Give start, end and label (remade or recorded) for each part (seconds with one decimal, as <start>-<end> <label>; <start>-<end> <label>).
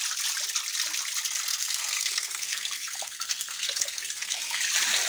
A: 0.0-1.5 recorded; 1.5-4.6 remade; 4.6-5.1 recorded